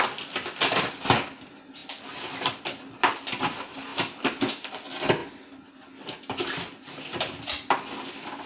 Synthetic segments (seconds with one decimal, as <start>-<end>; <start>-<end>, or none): none